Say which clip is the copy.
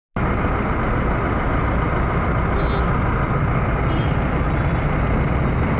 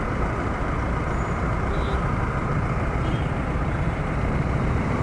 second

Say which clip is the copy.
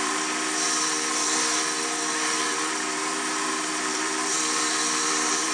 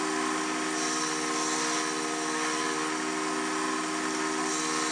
first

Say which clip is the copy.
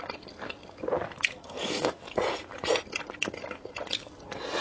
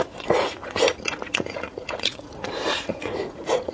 second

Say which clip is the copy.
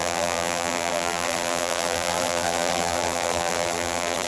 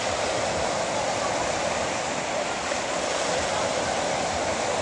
first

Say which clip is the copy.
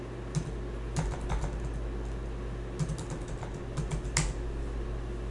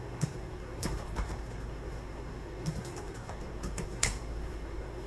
second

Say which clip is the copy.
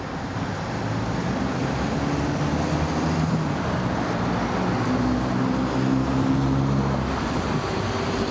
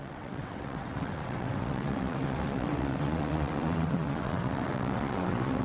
second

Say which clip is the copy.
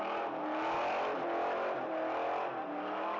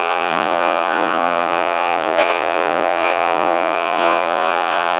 second